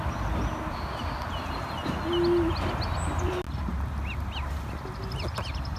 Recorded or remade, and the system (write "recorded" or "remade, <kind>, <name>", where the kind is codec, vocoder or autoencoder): recorded